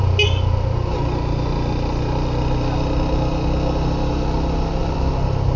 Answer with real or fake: real